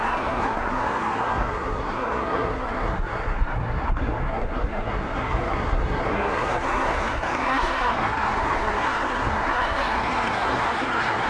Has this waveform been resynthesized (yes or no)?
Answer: yes